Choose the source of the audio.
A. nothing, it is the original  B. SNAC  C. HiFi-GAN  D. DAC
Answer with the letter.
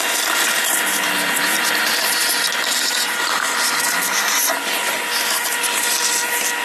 A